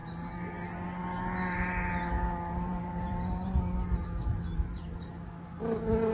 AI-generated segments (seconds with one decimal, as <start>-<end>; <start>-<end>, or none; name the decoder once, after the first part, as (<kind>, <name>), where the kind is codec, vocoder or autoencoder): 2.7-3.6 (vocoder, BigVGAN v2); 4.3-5.1